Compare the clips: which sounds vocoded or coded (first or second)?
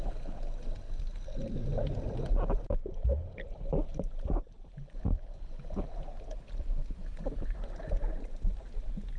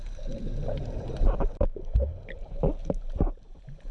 second